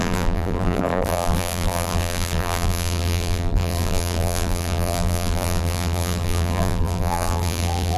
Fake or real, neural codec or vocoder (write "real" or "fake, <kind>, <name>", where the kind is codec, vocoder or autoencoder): fake, vocoder, BigVGAN v2